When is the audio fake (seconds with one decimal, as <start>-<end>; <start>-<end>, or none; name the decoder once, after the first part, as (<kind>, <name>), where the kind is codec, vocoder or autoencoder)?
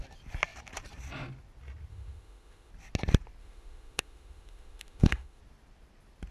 1.9-2.7 (autoencoder, DAC-VAE); 3.4-5.4